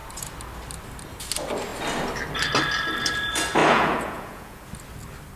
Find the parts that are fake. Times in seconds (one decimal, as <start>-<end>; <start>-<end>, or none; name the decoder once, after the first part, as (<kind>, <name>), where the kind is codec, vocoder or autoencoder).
3.6-4.7 (vocoder, Vocos)